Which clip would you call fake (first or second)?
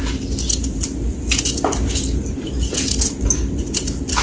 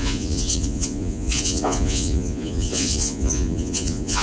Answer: second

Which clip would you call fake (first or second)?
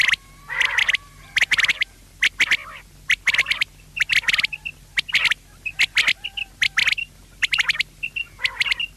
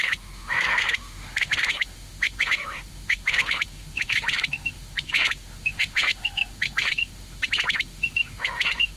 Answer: second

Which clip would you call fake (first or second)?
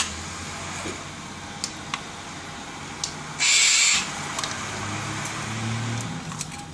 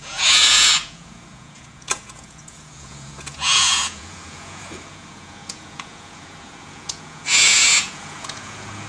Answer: second